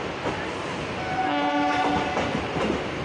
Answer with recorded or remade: recorded